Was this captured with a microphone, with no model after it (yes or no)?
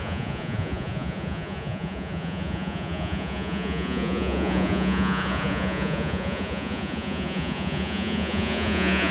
no